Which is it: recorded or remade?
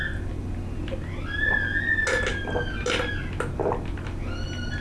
recorded